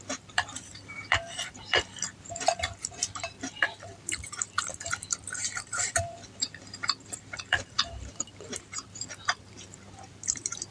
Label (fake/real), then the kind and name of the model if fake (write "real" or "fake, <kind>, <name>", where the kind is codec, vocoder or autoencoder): fake, vocoder, BigVGAN v2